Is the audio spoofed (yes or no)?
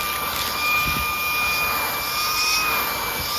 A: no